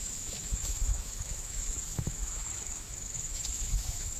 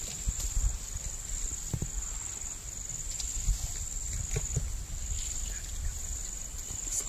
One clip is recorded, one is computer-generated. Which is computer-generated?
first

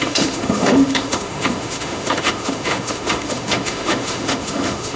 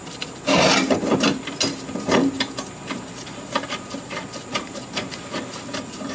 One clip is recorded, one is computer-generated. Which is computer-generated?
first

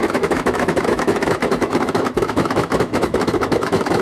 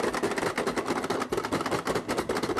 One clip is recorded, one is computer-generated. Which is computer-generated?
first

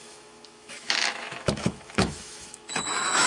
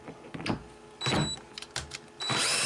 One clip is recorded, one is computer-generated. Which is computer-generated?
first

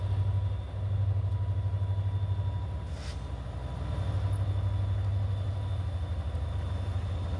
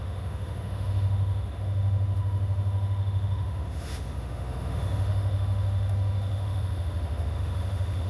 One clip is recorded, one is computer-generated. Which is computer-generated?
second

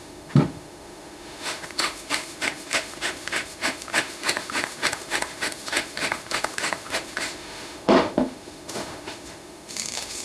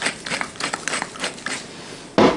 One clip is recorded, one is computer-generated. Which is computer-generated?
first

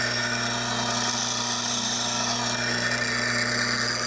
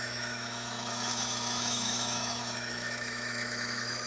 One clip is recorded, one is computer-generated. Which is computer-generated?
second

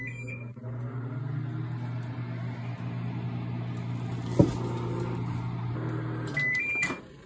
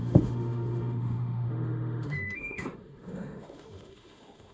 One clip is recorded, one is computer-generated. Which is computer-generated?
second